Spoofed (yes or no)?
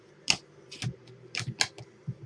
no